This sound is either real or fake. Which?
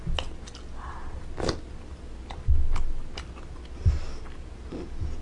real